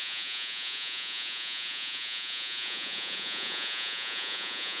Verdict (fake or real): fake